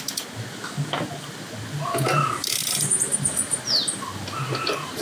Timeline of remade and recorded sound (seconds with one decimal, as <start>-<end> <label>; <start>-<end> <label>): 0.0-5.0 recorded